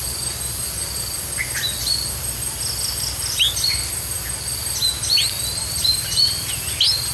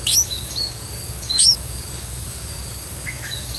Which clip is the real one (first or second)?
first